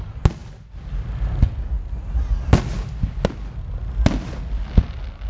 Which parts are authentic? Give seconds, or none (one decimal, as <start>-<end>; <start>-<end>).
0.0-5.3